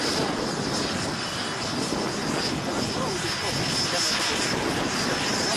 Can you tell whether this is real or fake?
real